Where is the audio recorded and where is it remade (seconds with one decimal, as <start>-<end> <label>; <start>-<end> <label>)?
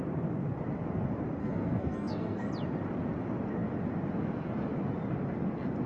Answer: 0.0-1.4 recorded; 1.4-2.5 remade; 2.5-5.9 recorded